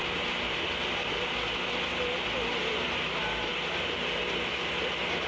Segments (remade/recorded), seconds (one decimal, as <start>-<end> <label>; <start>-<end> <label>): 0.0-5.3 recorded